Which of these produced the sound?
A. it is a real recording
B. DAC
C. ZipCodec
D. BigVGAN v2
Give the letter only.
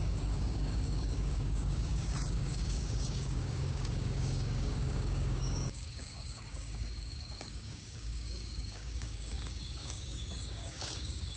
B